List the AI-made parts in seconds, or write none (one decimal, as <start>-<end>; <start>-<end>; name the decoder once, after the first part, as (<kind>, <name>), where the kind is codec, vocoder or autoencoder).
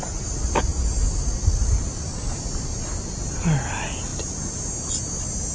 none